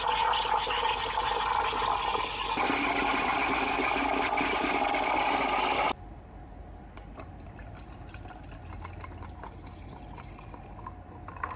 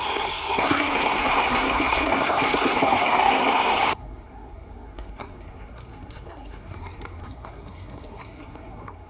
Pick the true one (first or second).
first